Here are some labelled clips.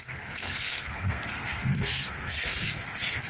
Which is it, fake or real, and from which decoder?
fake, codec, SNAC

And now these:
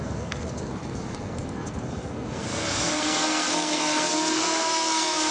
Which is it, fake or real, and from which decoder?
fake, codec, SNAC